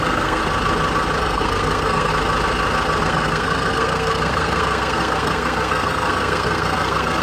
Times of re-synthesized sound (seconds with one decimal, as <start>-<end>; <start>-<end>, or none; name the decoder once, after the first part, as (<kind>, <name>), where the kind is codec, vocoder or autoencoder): 0.0-0.4 (codec, SNAC); 1.2-2.1; 3.0-7.2